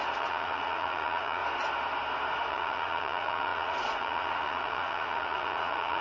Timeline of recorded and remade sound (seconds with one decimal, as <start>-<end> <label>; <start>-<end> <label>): 0.0-1.4 remade; 1.4-2.5 recorded; 2.5-6.0 remade